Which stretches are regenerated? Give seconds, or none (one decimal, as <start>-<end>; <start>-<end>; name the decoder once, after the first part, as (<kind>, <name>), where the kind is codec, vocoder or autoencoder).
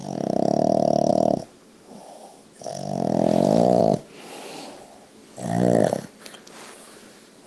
1.1-2.7 (autoencoder, DAC-VAE); 3.8-5.2; 6.8-7.5